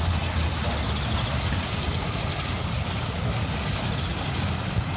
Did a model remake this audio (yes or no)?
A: no